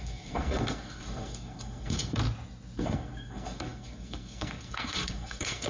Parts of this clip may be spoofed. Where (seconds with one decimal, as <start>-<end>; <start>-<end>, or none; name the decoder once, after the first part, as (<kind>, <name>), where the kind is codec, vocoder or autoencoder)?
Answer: 0.0-2.2 (codec, SNAC); 2.8-5.7